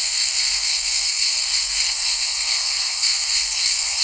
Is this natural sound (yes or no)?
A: no